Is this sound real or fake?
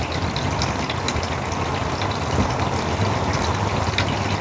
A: real